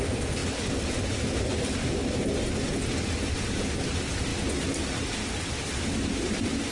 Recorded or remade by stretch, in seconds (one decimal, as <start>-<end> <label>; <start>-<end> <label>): 0.0-6.7 recorded